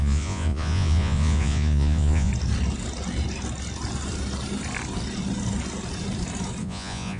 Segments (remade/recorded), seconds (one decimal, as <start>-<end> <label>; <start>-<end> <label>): 0.0-2.3 remade; 2.3-6.6 recorded; 6.6-7.2 remade